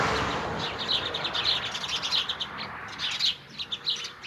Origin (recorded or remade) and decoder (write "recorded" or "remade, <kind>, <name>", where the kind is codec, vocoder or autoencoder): recorded